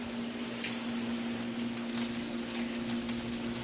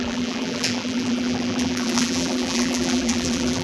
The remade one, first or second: second